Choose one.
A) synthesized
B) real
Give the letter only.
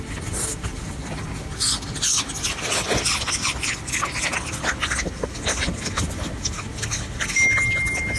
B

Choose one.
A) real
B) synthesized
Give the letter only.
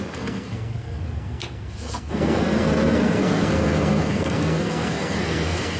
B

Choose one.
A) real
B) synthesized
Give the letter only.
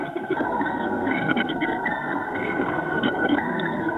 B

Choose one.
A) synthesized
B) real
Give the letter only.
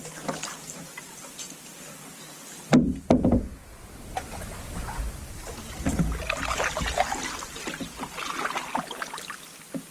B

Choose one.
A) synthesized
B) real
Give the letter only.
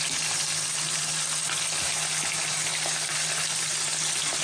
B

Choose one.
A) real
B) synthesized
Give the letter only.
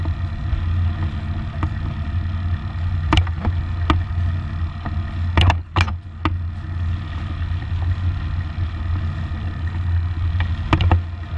A